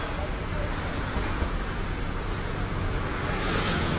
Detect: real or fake fake